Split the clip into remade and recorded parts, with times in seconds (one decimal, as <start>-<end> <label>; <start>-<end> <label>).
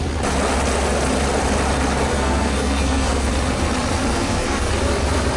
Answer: 0.0-2.1 recorded; 2.1-3.3 remade; 3.3-4.1 recorded; 4.1-4.7 remade; 4.7-5.4 recorded